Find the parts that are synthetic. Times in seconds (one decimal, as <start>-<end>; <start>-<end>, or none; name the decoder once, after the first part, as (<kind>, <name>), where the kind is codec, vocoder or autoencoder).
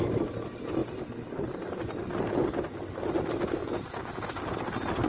3.6-4.4 (vocoder, Vocos)